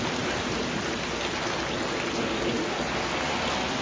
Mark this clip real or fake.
real